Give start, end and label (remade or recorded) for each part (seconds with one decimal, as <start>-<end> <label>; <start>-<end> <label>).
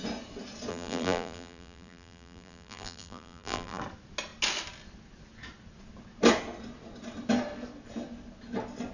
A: 0.0-0.7 recorded; 0.7-3.8 remade; 3.8-8.9 recorded